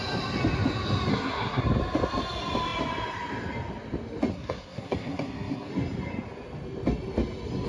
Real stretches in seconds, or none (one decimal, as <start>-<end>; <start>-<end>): 0.0-1.1; 1.6-4.3; 5.7-7.7